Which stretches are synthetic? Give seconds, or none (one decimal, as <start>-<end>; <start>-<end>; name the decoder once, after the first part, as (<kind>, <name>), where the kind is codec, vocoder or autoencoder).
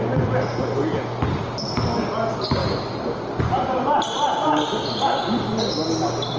none